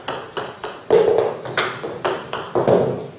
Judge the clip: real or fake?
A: real